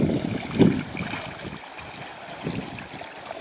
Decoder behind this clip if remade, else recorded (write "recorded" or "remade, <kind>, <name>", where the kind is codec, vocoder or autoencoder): recorded